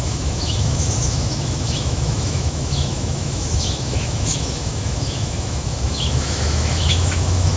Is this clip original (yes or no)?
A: no